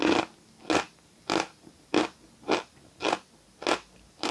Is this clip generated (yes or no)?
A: no